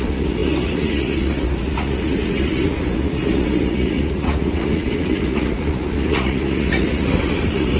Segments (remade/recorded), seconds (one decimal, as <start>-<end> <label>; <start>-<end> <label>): 0.0-7.8 remade